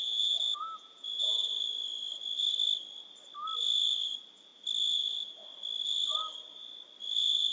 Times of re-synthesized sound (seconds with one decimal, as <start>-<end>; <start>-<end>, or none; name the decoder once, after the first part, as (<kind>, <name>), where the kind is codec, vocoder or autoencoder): 0.0-1.4 (vocoder, Vocos)